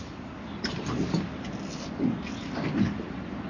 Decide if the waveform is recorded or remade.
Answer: recorded